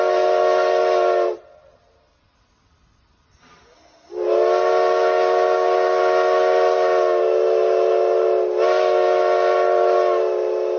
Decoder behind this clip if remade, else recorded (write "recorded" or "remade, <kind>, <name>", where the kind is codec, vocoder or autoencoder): recorded